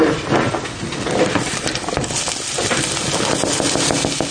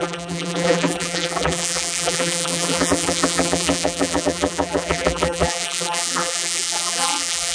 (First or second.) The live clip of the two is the first